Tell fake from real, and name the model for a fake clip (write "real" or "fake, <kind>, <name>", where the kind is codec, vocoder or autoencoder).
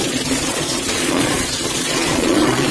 fake, vocoder, Vocos